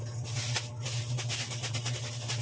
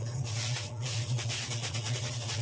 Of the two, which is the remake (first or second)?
second